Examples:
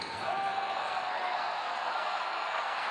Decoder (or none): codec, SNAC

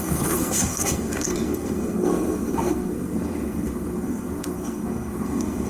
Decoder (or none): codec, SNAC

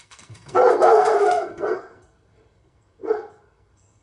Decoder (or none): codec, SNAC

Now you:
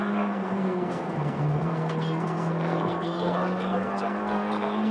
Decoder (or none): codec, SNAC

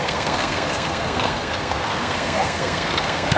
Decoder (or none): codec, SNAC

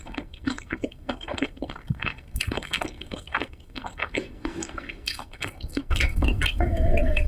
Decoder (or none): codec, SNAC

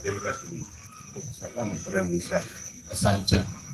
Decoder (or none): codec, SNAC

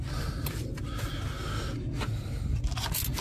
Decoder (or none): none